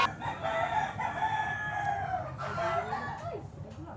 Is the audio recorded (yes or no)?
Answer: yes